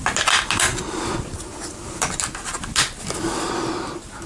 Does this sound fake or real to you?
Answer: real